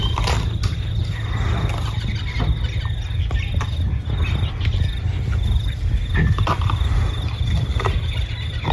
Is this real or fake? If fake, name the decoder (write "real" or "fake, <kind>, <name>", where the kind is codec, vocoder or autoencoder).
real